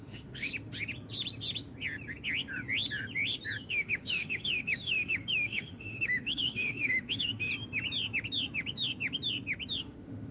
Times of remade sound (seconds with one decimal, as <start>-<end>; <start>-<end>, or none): 0.0-0.5; 3.7-7.5; 9.8-10.3